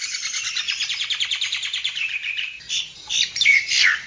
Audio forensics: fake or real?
fake